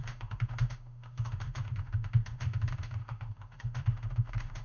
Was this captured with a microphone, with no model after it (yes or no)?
no